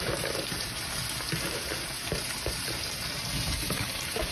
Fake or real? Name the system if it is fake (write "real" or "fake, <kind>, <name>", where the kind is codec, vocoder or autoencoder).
fake, vocoder, BigVGAN v2